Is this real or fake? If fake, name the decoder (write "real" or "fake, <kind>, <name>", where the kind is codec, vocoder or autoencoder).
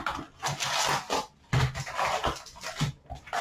real